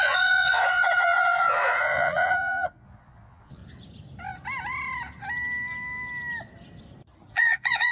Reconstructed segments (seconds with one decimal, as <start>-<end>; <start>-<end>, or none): 0.0-3.6; 7.3-7.9